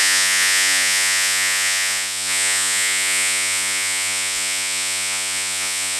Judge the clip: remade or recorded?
remade